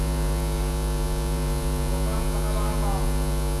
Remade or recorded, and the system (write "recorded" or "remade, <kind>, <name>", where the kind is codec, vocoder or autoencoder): remade, vocoder, Vocos